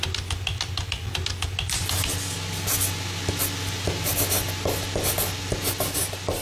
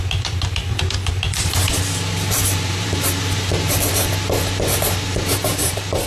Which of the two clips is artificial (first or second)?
second